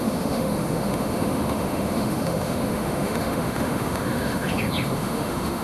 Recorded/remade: remade